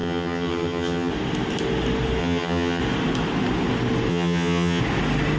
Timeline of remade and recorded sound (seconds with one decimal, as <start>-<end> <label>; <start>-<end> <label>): 0.0-1.1 remade; 1.1-2.2 recorded; 2.2-2.8 remade; 2.8-4.1 recorded; 4.1-4.8 remade; 4.8-5.4 recorded

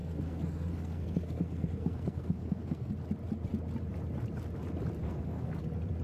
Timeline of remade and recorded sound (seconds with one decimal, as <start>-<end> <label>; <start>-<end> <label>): 0.0-2.9 remade; 2.9-5.0 recorded; 5.0-5.6 remade; 5.6-6.0 recorded